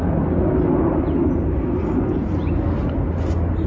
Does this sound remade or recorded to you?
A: recorded